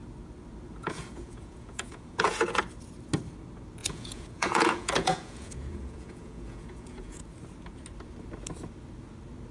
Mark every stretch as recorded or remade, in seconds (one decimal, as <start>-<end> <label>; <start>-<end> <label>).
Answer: 0.0-0.8 recorded; 0.8-2.6 remade; 2.6-3.8 recorded; 3.8-7.2 remade; 7.2-9.5 recorded